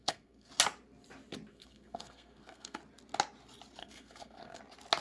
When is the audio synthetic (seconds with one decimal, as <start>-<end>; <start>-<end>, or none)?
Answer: 0.0-0.5; 1.5-2.8; 3.8-4.6